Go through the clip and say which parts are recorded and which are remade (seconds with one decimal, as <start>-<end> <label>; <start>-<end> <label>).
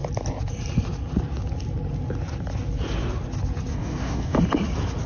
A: 0.0-3.7 recorded; 3.7-4.4 remade; 4.4-5.1 recorded